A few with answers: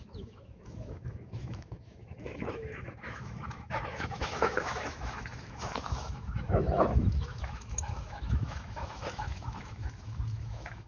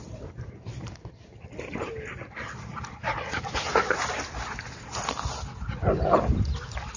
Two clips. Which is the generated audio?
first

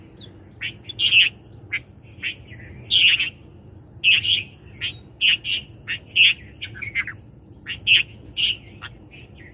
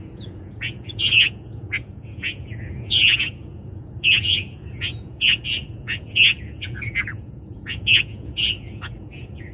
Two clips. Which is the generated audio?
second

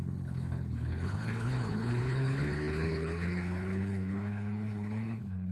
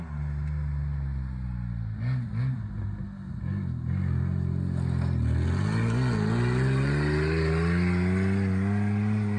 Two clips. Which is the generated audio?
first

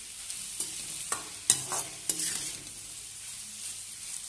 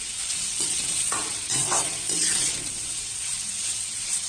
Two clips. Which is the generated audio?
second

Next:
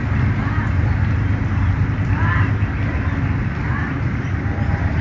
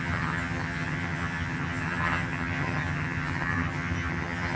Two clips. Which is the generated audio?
second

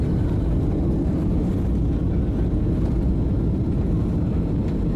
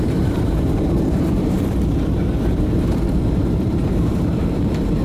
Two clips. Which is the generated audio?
second